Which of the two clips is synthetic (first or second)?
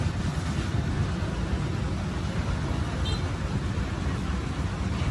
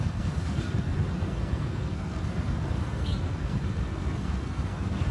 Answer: second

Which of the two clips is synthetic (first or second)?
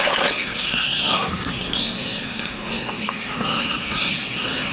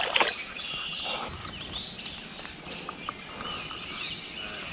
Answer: first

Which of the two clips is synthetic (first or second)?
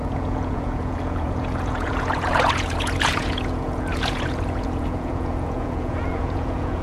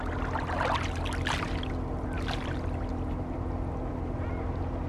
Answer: first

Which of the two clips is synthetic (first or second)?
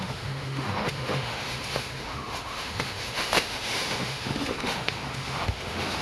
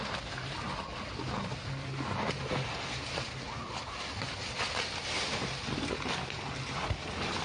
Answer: first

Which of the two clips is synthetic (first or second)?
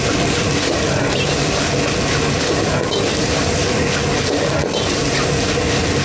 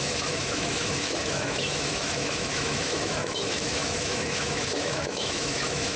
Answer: second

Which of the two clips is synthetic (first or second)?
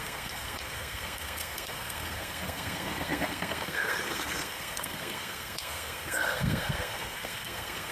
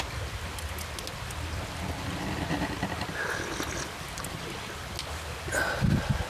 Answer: first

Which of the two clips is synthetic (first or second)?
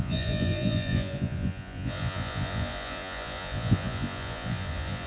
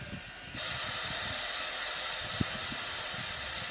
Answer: first